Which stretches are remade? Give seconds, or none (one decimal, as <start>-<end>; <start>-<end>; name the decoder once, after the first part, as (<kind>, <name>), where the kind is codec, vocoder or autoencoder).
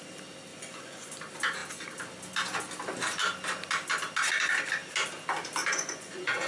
0.5-1.1 (vocoder, Vocos); 5.6-6.5